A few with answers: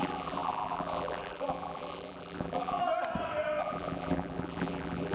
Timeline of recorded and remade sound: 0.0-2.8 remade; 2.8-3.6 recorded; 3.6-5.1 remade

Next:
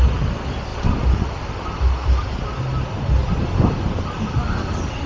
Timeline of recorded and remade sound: 0.0-5.1 recorded